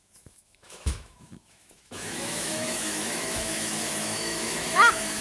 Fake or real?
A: fake